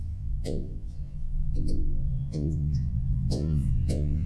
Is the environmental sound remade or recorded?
remade